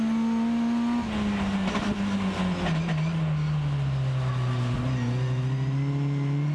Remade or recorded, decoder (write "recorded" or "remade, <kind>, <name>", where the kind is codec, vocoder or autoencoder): recorded